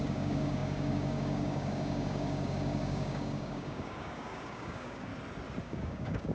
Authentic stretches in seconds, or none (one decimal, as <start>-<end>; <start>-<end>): 5.1-5.6